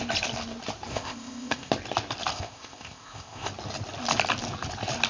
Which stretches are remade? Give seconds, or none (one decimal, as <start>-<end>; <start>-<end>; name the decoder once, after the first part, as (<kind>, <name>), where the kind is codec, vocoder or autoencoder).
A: 0.9-1.7 (codec, ZipCodec); 2.3-3.5